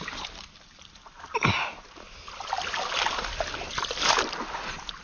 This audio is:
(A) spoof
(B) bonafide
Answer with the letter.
B